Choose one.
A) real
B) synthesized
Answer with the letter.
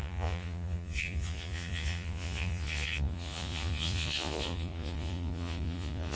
B